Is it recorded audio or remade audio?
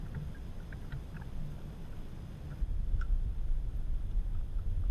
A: recorded